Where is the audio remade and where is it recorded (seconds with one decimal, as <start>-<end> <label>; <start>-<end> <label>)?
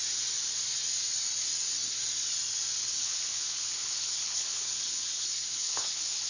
0.0-2.8 recorded; 2.8-6.3 remade